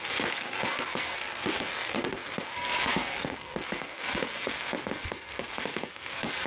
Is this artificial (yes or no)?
yes